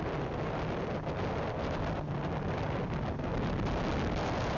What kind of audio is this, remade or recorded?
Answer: recorded